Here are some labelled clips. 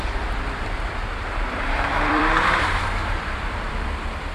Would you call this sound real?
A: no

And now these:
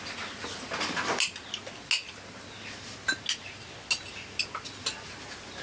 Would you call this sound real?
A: yes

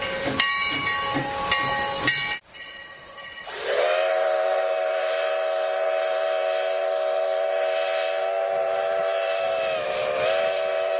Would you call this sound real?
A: no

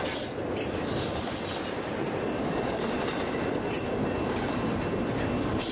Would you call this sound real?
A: yes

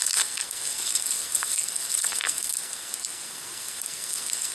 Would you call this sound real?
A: no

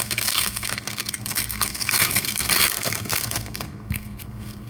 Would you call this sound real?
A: no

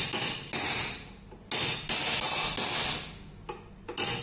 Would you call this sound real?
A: yes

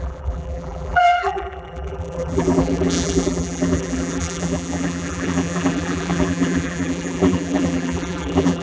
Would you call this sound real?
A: no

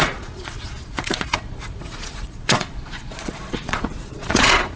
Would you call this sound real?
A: no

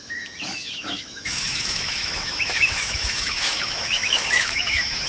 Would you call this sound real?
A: no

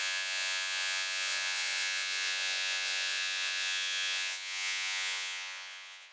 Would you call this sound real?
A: no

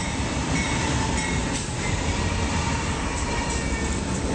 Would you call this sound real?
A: yes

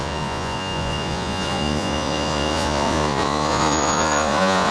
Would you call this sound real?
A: no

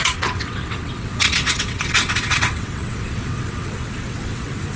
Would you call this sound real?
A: no